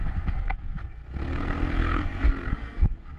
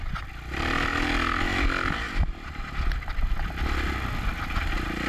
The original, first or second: second